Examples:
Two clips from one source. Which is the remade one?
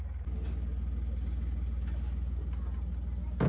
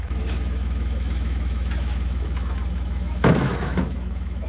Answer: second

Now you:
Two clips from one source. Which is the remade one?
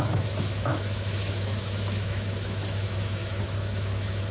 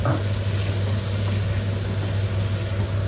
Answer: first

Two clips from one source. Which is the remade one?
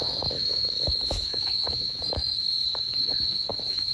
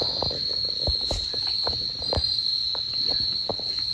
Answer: first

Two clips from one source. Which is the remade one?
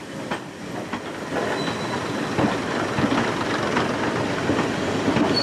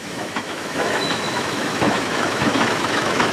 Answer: second